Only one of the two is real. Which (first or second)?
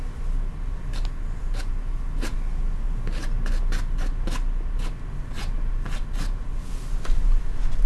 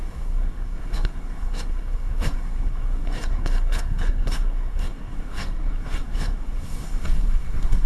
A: first